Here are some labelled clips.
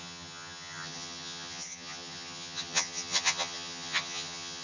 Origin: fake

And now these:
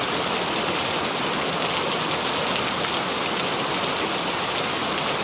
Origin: real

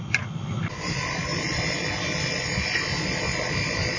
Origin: real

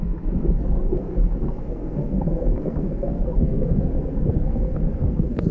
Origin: fake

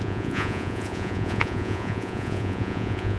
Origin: fake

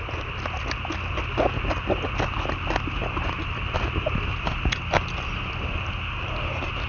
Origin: real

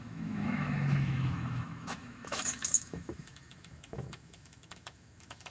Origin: fake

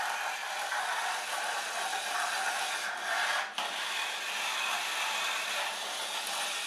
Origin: real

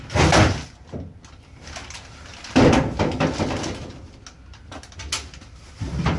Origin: real